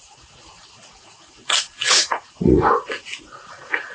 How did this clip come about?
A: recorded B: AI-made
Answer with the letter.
B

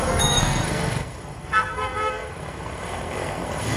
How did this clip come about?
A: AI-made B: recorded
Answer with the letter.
A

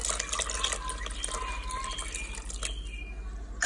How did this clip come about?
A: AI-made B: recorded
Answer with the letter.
B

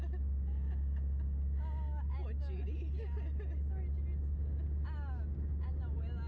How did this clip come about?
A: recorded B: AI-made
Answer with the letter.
A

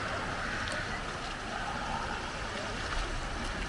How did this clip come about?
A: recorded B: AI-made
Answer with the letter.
A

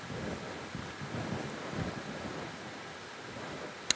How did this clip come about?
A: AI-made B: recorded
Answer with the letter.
B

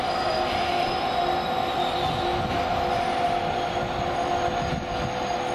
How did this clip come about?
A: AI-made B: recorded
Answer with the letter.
B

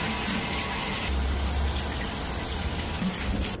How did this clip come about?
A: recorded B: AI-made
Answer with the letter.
A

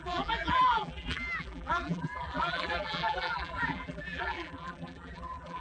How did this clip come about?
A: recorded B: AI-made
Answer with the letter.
B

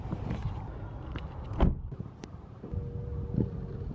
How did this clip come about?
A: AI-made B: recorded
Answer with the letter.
B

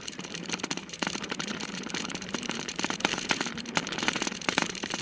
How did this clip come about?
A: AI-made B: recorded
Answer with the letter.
A